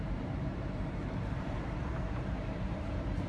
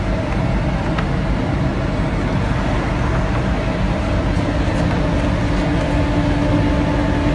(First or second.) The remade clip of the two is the first